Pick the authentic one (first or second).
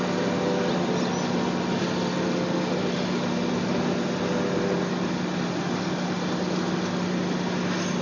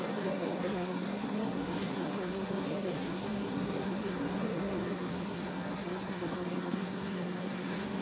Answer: first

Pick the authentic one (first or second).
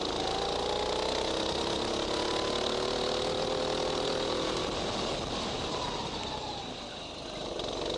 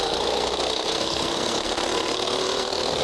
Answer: first